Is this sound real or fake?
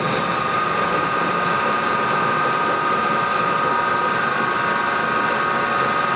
real